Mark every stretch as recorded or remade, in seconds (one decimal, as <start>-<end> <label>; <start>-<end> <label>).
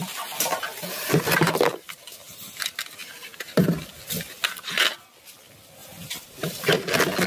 0.0-5.8 recorded; 5.8-6.7 remade; 6.7-7.3 recorded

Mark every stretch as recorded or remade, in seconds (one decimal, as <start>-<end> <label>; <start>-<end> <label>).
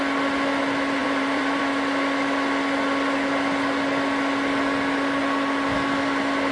0.0-1.0 recorded; 1.0-1.6 remade; 1.6-6.5 recorded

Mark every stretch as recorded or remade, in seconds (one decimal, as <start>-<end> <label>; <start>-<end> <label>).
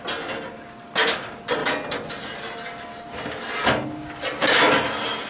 0.0-5.3 recorded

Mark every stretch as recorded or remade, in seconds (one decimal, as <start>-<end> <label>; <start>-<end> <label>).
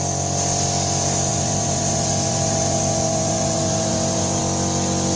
0.0-1.3 recorded; 1.3-4.4 remade; 4.4-5.2 recorded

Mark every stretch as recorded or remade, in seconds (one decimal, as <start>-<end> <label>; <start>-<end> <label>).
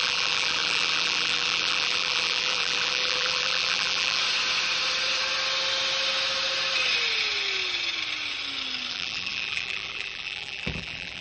0.0-4.2 remade; 4.2-8.9 recorded; 8.9-11.2 remade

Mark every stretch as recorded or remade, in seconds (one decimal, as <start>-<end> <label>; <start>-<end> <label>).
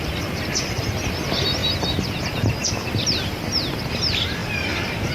0.0-1.6 recorded; 1.6-2.3 remade; 2.3-4.4 recorded; 4.4-5.1 remade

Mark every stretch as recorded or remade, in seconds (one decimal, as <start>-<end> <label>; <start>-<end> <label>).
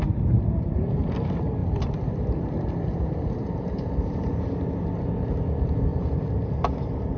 0.0-1.6 recorded; 1.6-4.4 remade; 4.4-5.9 recorded; 5.9-7.2 remade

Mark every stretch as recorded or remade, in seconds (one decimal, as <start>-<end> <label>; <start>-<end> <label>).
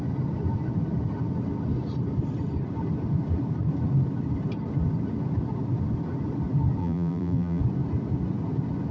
0.0-6.8 recorded; 6.8-7.6 remade; 7.6-8.9 recorded